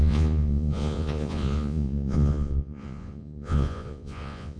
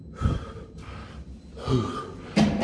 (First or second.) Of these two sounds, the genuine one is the second